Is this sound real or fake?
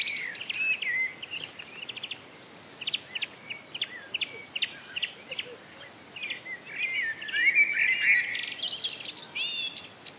real